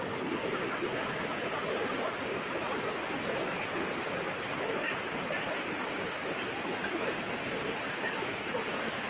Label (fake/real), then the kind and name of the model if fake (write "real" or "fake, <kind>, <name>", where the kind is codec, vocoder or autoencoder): real